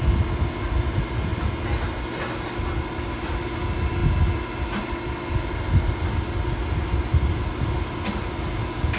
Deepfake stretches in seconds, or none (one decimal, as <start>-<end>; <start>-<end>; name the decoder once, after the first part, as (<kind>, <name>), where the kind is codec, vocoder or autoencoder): none